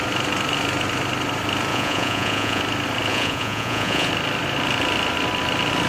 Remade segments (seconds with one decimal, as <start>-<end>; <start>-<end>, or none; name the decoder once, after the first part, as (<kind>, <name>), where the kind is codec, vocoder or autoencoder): 1.7-2.6 (vocoder, Vocos); 3.1-4.1